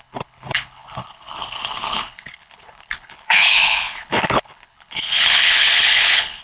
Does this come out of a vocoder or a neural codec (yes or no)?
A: yes